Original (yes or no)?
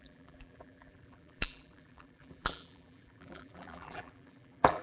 no